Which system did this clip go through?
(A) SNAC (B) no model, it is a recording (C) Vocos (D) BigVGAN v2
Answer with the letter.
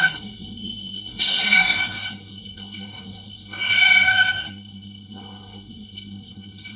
A